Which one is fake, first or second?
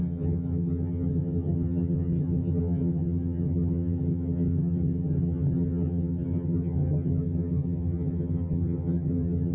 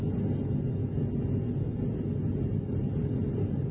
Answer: first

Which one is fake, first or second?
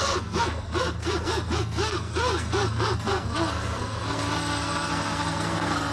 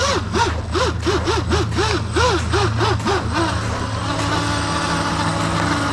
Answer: first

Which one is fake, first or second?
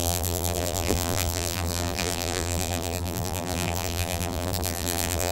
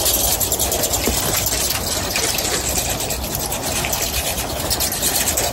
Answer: first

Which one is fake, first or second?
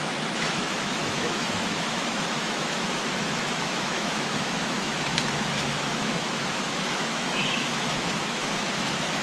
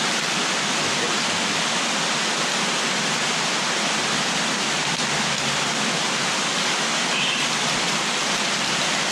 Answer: first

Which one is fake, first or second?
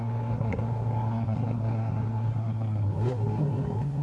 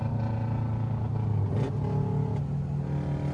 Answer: first